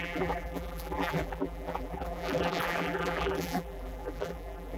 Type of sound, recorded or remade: remade